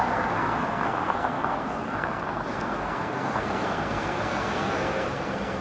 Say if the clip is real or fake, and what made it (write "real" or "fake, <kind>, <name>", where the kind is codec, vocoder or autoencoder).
fake, codec, SNAC